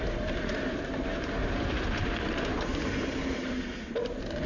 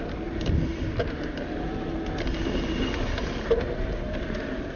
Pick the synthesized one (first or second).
first